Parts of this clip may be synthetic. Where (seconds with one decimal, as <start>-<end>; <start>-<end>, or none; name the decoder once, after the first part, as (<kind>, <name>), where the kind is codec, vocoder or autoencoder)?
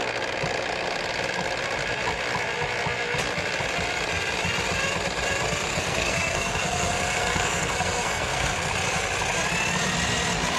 5.7-8.7 (codec, SNAC)